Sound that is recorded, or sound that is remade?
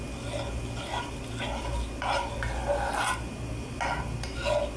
recorded